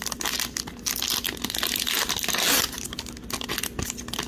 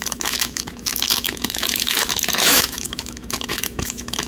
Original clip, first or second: first